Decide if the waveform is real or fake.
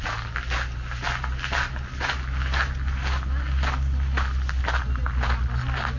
real